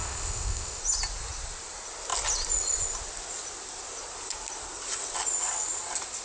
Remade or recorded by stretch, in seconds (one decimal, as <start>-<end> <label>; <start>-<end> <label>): 0.0-0.8 remade; 0.8-6.2 recorded